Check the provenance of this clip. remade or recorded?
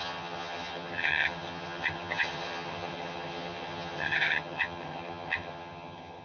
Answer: remade